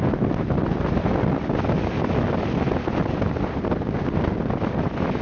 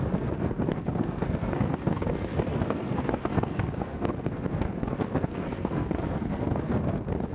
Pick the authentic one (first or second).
first